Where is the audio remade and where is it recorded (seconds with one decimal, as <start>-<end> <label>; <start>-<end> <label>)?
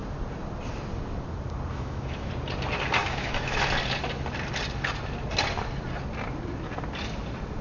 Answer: 0.0-1.7 recorded; 1.7-2.3 remade; 2.3-3.0 recorded; 3.0-3.6 remade; 3.6-7.6 recorded